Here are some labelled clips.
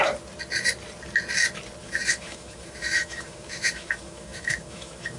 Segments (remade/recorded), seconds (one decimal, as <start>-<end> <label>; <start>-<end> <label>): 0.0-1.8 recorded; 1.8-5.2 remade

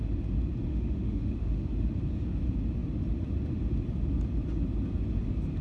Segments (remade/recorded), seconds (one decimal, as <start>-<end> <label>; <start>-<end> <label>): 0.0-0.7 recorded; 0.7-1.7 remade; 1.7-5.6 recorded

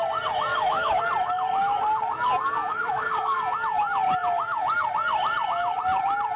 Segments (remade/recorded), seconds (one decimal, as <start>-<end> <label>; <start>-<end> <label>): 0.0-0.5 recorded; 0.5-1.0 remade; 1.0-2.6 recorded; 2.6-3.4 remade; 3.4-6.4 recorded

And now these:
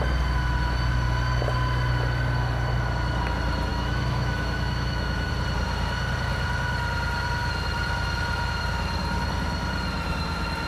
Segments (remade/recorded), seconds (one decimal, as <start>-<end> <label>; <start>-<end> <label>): 0.0-3.7 recorded; 3.7-5.3 remade; 5.3-10.7 recorded